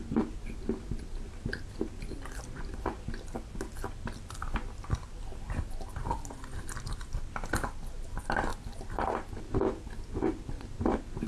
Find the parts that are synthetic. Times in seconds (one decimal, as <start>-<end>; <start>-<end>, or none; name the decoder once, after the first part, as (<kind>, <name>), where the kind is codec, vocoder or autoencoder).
none